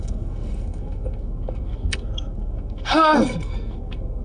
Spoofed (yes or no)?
yes